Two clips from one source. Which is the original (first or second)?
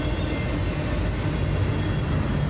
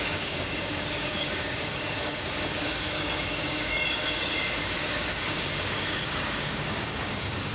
first